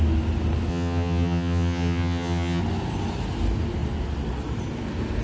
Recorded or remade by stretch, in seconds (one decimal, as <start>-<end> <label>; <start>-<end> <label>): 0.0-0.7 recorded; 0.7-2.6 remade; 2.6-5.2 recorded